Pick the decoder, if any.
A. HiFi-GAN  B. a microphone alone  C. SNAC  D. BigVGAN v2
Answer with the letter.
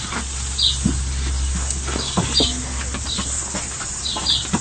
B